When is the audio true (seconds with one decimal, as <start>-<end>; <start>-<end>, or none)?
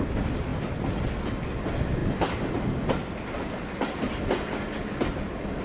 0.0-5.6